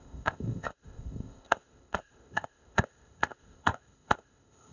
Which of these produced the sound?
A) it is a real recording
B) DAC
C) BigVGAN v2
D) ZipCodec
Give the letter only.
D